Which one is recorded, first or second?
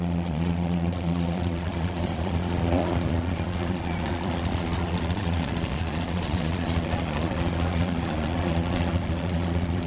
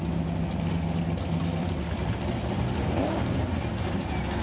second